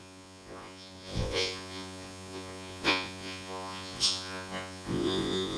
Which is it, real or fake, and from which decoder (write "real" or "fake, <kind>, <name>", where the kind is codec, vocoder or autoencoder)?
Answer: fake, vocoder, Vocos